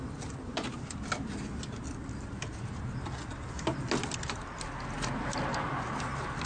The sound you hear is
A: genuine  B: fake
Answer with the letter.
A